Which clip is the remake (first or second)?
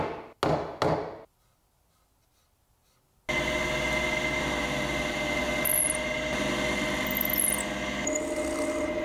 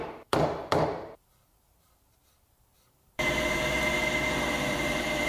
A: second